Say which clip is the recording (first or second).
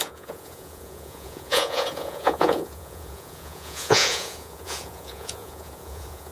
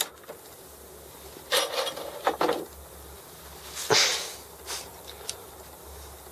second